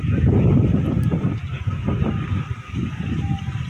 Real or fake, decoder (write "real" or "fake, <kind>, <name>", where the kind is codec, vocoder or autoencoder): real